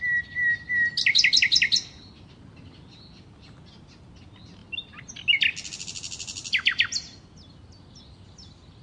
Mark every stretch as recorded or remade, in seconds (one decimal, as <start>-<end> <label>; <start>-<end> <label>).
0.0-8.8 recorded